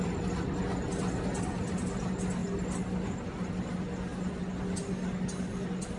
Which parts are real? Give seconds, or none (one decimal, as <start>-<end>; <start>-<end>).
0.0-6.0